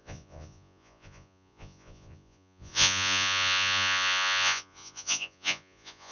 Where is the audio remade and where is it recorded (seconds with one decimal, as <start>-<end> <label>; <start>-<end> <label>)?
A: 0.0-6.1 remade